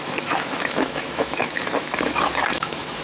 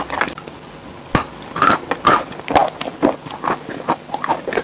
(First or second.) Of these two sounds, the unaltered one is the second